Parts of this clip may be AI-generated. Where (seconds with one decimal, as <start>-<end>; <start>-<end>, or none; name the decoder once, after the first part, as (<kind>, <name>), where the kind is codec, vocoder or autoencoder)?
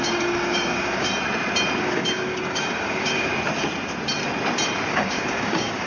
0.0-1.1 (codec, DAC); 1.8-3.3; 4.9-5.9